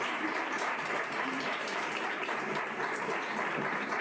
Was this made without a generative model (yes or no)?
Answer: no